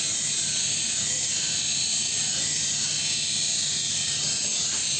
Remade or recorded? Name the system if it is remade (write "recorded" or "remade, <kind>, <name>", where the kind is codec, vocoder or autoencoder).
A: recorded